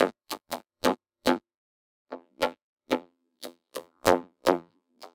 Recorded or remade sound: remade